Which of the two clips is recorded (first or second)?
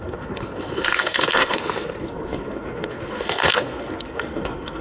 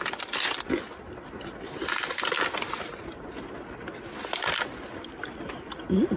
second